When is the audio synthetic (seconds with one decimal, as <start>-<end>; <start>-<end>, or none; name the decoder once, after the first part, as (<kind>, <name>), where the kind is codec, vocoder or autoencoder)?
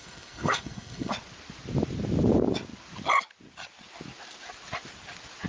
0.0-1.1 (codec, SNAC)